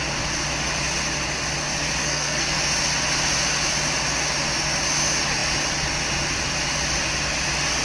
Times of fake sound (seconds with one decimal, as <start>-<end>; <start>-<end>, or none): 2.0-2.6